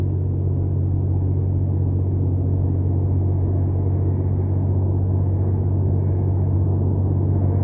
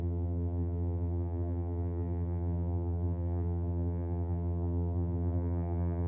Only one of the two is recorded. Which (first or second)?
first